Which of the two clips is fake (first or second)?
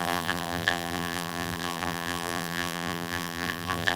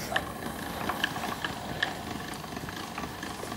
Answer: first